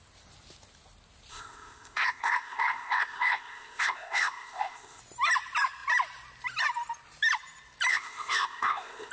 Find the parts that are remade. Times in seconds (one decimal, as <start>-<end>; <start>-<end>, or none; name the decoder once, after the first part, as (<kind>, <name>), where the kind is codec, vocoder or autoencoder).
1.3-5.0 (codec, ZipCodec); 7.9-9.1